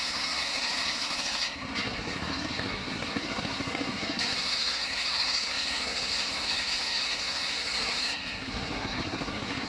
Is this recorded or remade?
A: remade